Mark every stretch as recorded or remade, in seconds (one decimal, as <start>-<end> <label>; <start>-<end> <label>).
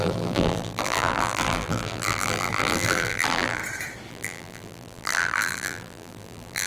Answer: 0.0-3.6 remade; 3.6-4.1 recorded; 4.1-6.7 remade